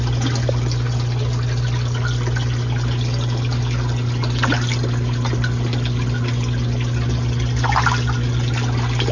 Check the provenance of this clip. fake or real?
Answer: real